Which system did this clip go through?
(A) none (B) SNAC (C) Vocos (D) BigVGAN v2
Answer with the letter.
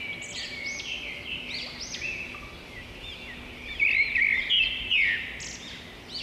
A